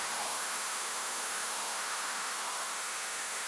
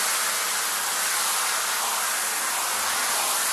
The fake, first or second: first